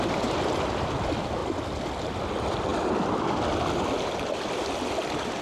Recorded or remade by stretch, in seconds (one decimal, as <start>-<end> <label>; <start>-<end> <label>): 0.0-2.7 remade; 2.7-4.9 recorded; 4.9-5.4 remade